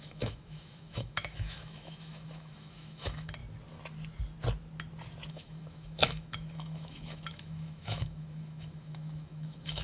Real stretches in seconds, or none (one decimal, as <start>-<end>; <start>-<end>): 3.4-5.3